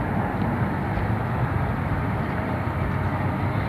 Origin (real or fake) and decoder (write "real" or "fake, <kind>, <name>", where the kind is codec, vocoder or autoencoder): real